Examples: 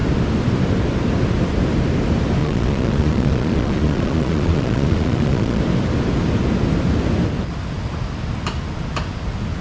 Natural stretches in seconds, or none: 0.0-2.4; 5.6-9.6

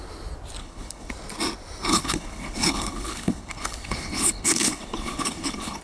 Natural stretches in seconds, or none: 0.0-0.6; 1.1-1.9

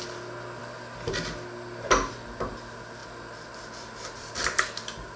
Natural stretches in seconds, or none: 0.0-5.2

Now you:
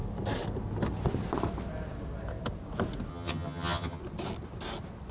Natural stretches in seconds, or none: 0.0-3.1; 4.0-5.1

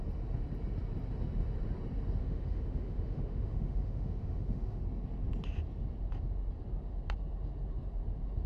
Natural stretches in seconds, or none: 0.0-2.2; 4.8-8.5

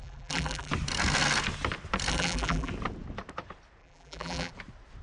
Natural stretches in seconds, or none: 0.7-2.1; 2.7-3.8; 4.5-5.0

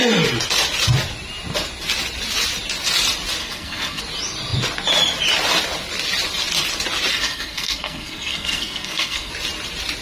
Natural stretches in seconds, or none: 0.0-3.4; 4.0-7.1; 9.3-10.0

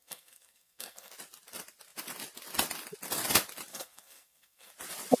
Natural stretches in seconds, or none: 1.1-3.7; 4.7-5.2